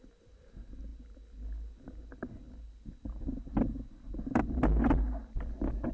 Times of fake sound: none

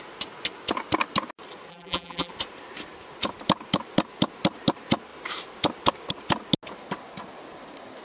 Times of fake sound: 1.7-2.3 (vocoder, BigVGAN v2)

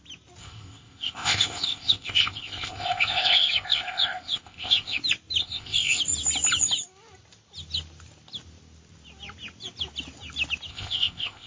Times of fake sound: 0.4-5.0 (codec, ZipCodec); 5.4-6.0; 10.7-11.5

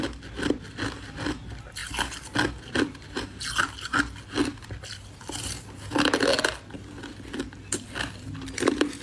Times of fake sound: none

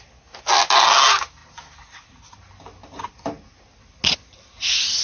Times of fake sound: none

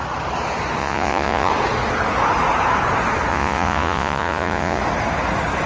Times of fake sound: 0.8-1.5 (vocoder, Vocos); 3.3-4.8

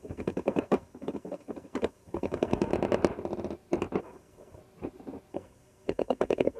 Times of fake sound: 0.0-2.7 (codec, SNAC); 4.0-4.6; 5.3-6.6